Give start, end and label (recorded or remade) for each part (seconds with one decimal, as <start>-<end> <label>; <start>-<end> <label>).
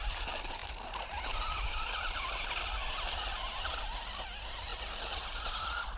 0.0-6.0 recorded